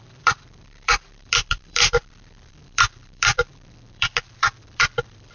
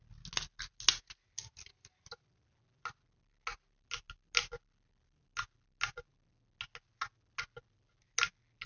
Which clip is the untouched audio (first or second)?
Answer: second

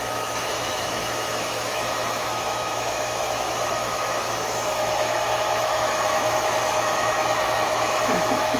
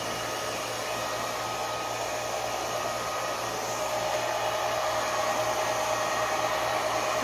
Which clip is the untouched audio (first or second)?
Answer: second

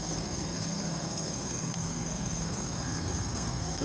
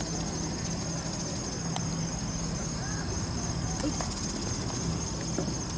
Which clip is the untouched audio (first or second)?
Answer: second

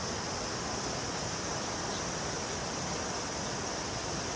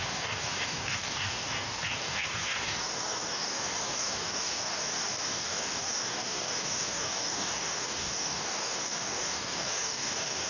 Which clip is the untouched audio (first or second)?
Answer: first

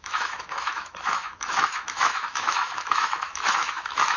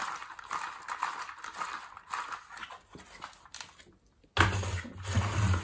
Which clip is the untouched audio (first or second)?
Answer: second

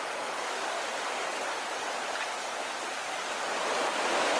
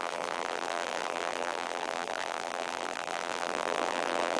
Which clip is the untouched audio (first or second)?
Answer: first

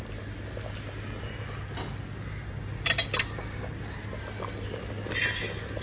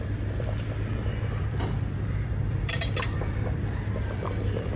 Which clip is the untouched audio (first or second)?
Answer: first